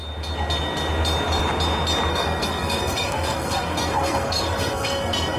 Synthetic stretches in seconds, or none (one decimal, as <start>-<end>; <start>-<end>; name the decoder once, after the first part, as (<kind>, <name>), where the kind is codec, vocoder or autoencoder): 2.1-5.4 (codec, SNAC)